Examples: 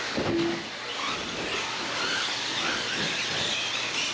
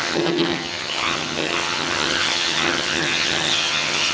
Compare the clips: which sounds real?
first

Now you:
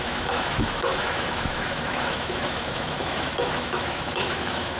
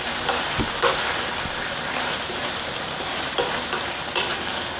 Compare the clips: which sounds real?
second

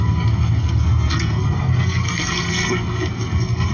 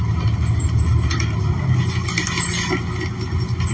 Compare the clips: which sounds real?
second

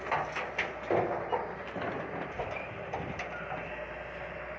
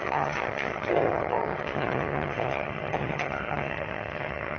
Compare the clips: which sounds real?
first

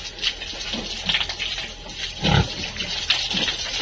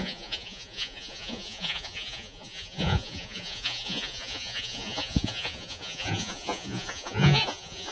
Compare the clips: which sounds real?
first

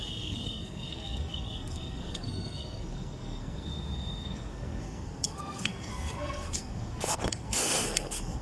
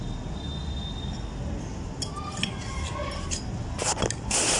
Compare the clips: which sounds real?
second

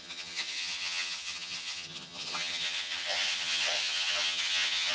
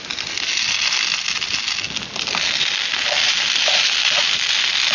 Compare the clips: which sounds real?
second